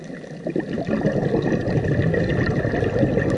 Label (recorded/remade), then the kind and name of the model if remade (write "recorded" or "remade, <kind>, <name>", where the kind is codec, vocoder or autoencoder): recorded